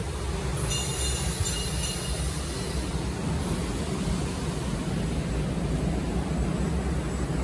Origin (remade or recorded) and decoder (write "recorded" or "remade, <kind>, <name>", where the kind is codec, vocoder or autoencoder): recorded